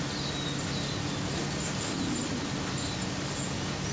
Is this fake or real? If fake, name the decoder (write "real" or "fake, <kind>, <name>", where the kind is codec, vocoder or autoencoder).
real